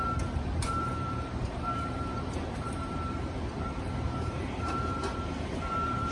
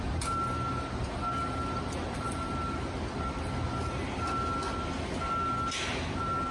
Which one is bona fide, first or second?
second